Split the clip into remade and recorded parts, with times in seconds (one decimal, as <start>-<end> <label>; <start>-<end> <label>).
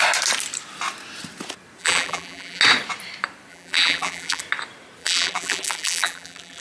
0.0-1.8 recorded; 1.8-2.6 remade; 2.6-3.5 recorded; 3.5-4.4 remade; 4.4-5.0 recorded; 5.0-6.6 remade